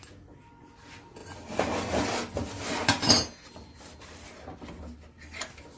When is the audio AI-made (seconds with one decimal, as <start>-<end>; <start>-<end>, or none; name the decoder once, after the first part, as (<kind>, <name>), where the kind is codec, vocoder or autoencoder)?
none